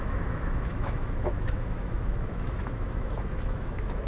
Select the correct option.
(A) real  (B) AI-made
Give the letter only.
B